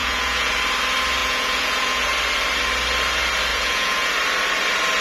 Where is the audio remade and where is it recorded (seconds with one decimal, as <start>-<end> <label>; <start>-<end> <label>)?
0.0-0.5 remade; 0.5-1.2 recorded; 1.2-2.1 remade; 2.1-3.5 recorded; 3.5-4.1 remade; 4.1-5.0 recorded